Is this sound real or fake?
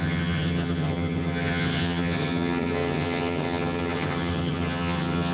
fake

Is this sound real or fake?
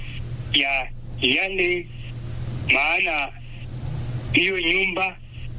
real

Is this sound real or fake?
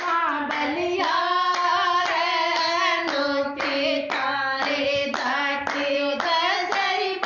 real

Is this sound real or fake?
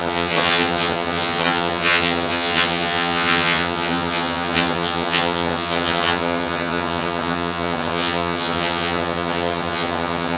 fake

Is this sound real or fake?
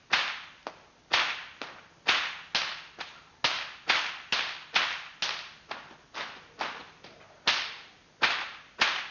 real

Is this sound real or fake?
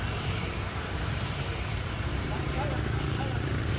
real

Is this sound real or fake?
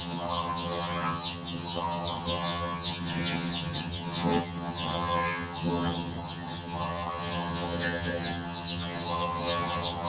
fake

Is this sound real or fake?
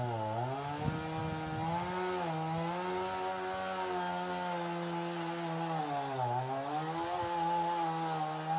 real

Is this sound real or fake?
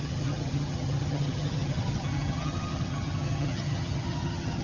fake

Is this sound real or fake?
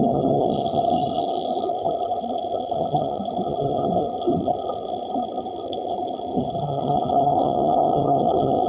fake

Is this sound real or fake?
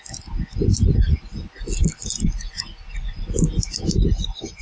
real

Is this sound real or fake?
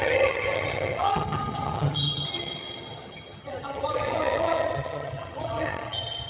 fake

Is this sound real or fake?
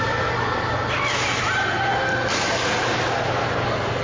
real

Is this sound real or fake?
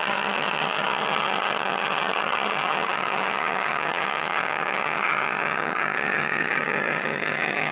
fake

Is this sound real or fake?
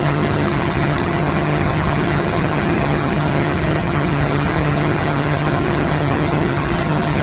fake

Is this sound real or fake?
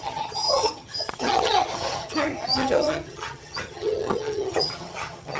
fake